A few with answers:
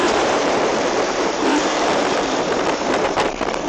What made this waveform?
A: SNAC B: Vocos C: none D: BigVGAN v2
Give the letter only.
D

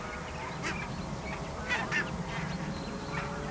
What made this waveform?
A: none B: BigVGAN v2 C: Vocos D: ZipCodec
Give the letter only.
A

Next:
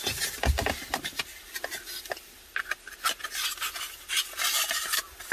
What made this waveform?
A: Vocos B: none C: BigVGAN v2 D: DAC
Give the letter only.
B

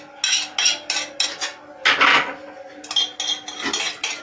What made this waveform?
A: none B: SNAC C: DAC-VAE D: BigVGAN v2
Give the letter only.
A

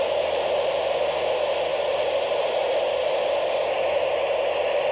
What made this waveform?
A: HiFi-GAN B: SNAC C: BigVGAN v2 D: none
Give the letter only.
D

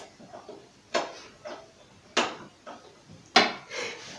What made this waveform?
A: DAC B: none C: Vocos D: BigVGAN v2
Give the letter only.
B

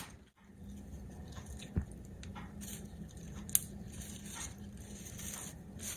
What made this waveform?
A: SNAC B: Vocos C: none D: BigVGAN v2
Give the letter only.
C